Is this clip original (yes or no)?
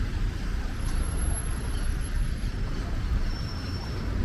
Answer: no